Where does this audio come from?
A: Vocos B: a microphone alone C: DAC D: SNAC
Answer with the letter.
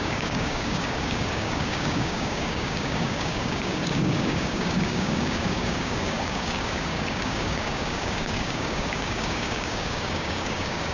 C